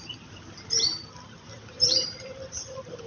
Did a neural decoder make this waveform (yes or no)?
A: no